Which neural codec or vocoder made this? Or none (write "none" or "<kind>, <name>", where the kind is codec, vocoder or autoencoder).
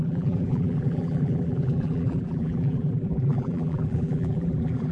vocoder, BigVGAN v2